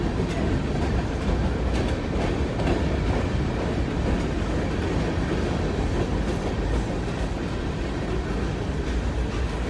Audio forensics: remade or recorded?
recorded